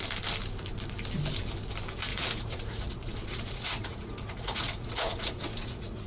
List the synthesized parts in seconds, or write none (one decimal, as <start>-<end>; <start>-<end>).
2.1-6.1